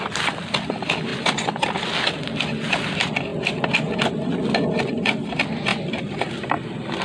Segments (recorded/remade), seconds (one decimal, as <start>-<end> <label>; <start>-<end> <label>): 0.0-5.7 recorded; 5.7-6.3 remade; 6.3-7.0 recorded